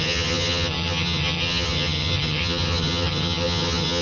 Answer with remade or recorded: remade